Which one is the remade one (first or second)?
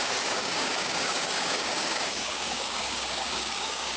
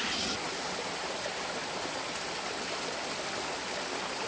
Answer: first